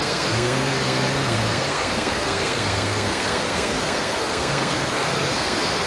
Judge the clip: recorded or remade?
remade